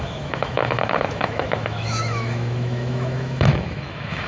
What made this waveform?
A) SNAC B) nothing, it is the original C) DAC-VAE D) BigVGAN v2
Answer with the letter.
C